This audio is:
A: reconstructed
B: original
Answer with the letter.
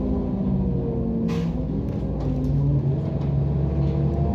B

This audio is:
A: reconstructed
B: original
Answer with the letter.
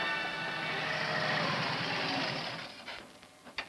B